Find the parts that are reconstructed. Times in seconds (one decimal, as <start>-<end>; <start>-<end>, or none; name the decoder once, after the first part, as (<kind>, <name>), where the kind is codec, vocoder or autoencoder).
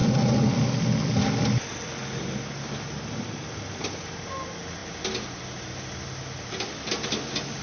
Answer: none